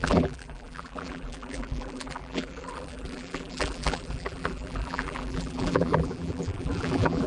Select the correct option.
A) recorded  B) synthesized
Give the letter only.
B